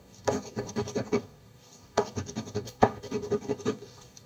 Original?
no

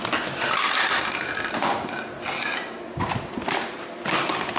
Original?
yes